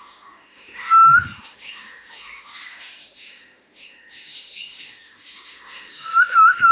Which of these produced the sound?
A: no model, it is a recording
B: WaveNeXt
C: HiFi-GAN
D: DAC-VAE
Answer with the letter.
D